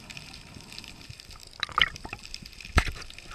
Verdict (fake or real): fake